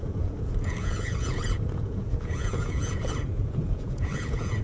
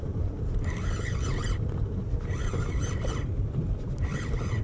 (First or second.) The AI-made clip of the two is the first